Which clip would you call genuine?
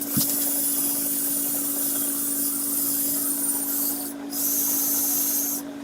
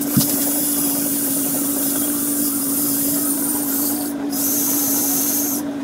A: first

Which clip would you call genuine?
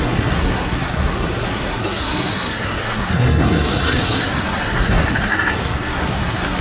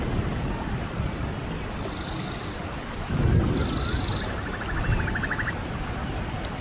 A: second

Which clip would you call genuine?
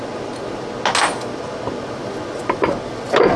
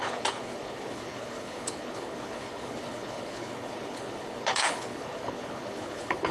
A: first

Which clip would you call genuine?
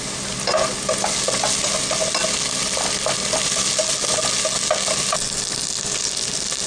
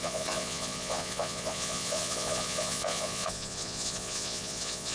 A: first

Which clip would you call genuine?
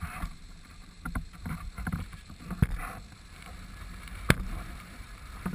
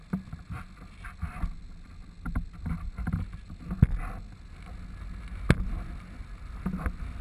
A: second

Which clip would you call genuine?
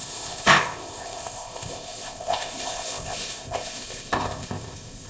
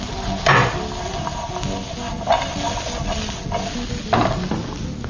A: second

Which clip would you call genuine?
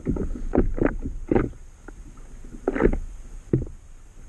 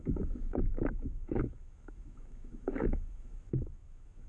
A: first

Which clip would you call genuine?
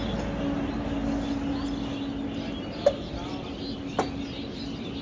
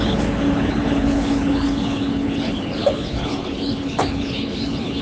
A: first